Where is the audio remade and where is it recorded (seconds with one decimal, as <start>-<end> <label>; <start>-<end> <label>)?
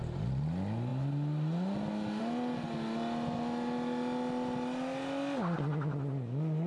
0.0-6.7 recorded